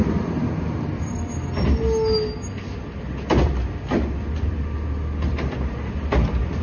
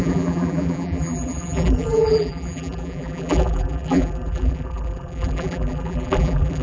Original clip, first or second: first